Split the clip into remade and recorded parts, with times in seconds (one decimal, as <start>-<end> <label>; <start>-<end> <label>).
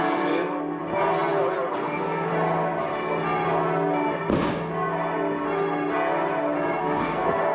0.0-0.8 remade; 0.8-1.7 recorded; 1.7-2.3 remade; 2.3-6.8 recorded; 6.8-7.5 remade